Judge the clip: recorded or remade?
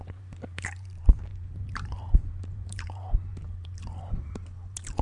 remade